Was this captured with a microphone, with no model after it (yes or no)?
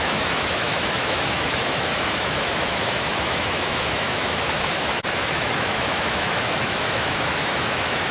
no